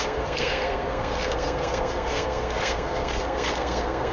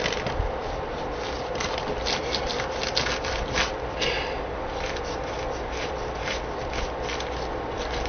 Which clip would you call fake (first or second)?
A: first